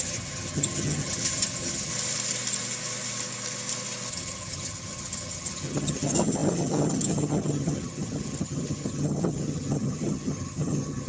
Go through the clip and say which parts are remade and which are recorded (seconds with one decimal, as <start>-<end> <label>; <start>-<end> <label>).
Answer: 0.0-1.9 remade; 1.9-4.1 recorded; 4.1-11.1 remade